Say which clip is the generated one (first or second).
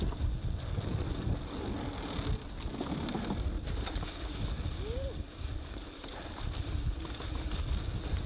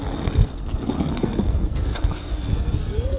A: second